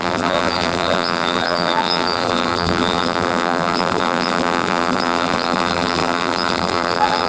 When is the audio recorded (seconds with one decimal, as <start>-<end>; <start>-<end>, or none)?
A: none